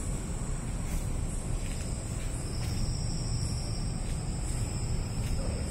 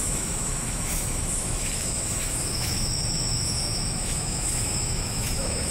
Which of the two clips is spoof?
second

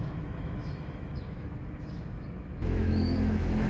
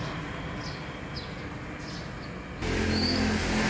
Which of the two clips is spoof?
first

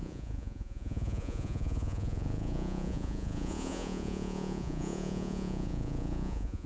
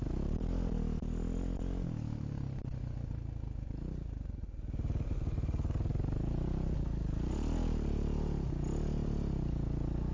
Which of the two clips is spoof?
first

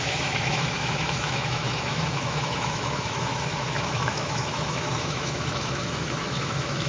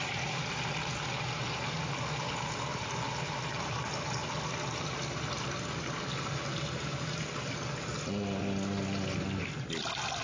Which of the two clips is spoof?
first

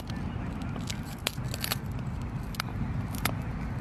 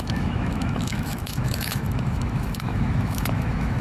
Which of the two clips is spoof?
second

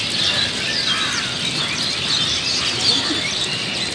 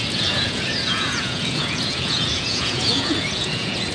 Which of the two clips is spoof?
second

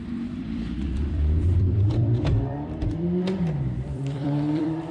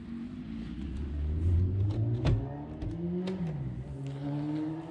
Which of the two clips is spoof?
first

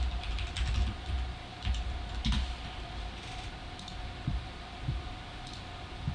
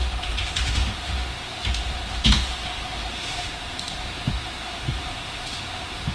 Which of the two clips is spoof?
second